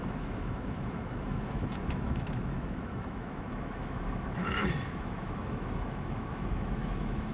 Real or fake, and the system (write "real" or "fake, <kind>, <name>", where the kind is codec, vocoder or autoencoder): fake, autoencoder, DAC-VAE